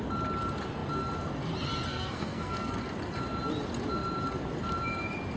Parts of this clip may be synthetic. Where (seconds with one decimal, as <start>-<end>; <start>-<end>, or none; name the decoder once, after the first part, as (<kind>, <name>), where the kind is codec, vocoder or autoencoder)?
1.9-2.8 (codec, SNAC)